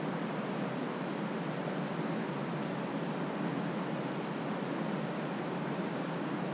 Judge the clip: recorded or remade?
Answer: recorded